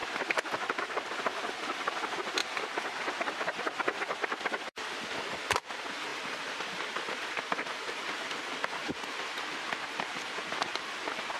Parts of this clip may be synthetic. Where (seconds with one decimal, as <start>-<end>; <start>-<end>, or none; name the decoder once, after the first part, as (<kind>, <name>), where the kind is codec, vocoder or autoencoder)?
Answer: 2.4-3.6 (vocoder, BigVGAN v2); 8.8-11.4